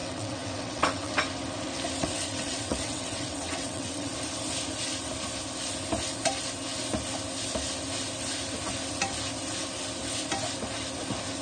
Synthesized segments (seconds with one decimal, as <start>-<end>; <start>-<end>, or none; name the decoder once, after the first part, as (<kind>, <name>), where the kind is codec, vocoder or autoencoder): 0.0-1.1 (vocoder, WaveNeXt); 2.0-4.1